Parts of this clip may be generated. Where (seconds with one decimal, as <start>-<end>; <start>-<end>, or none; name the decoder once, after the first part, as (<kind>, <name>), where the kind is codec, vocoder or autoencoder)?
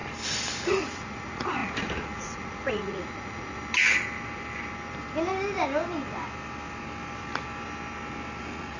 0.6-3.6 (vocoder, Vocos); 8.4-8.8